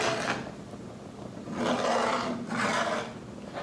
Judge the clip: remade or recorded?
recorded